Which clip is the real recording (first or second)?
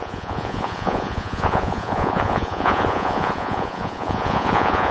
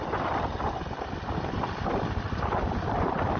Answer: second